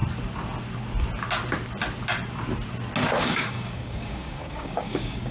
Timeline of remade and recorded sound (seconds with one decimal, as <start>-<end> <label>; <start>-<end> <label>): 0.0-3.2 recorded; 3.2-5.3 remade